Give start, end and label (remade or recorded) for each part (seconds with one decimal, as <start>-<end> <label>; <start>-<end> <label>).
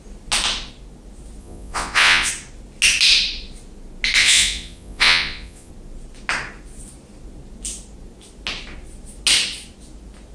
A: 0.0-1.4 recorded; 1.4-2.3 remade; 2.3-4.2 recorded; 4.2-5.7 remade; 5.7-10.3 recorded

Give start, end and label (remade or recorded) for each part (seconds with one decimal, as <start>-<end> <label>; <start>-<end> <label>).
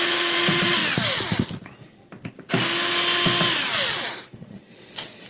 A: 0.0-0.8 remade; 0.8-4.0 recorded; 4.0-5.3 remade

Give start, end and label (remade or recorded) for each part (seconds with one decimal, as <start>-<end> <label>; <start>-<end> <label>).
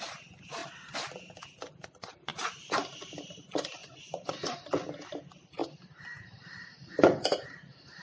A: 0.0-3.8 recorded; 3.8-4.3 remade; 4.3-8.0 recorded